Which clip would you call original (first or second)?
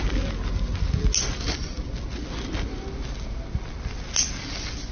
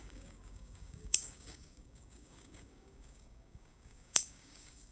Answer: first